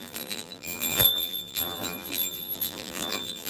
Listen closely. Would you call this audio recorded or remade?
remade